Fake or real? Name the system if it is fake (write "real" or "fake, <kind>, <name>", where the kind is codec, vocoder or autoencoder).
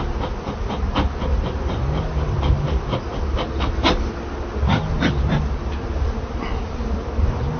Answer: real